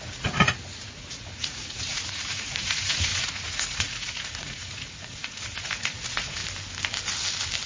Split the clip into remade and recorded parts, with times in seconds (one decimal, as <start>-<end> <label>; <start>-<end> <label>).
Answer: 0.0-6.4 remade; 6.4-7.7 recorded